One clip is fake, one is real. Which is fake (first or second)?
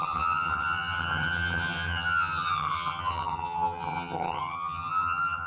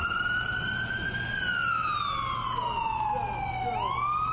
first